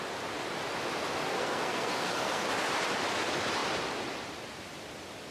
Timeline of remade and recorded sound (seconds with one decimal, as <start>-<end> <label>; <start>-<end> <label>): 0.0-1.3 recorded; 1.3-2.5 remade; 2.5-5.3 recorded